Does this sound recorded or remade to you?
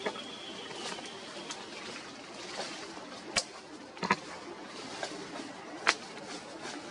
recorded